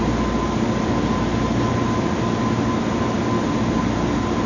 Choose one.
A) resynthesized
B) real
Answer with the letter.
B